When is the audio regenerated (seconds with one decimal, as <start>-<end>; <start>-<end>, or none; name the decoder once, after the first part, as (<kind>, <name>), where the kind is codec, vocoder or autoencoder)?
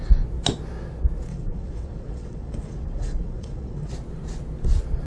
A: 1.3-3.9 (vocoder, WaveNeXt)